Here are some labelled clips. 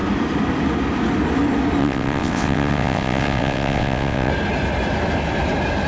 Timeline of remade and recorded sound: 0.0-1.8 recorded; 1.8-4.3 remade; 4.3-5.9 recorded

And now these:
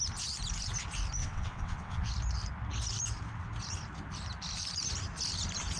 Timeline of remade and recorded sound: 0.0-1.2 recorded; 1.2-2.1 remade; 2.1-5.8 recorded

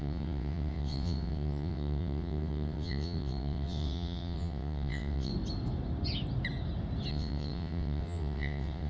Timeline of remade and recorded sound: 0.0-5.3 remade; 5.3-7.1 recorded; 7.1-8.9 remade

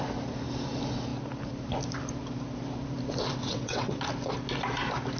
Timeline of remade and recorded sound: 0.0-3.4 recorded; 3.4-3.9 remade; 3.9-5.2 recorded

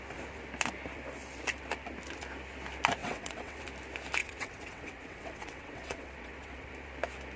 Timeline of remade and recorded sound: 0.0-3.0 recorded; 3.0-3.6 remade; 3.6-4.2 recorded; 4.2-6.7 remade; 6.7-7.4 recorded

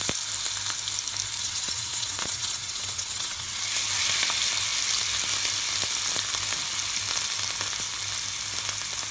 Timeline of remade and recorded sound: 0.0-1.4 recorded; 1.4-3.6 remade; 3.6-9.1 recorded